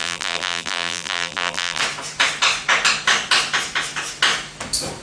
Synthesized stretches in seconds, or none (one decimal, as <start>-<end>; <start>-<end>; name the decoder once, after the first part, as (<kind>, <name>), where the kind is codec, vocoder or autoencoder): 0.0-1.8 (vocoder, BigVGAN v2)